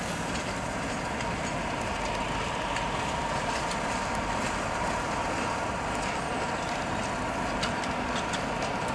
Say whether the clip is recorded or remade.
recorded